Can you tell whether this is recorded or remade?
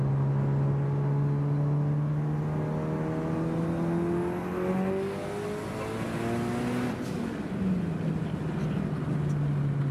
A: recorded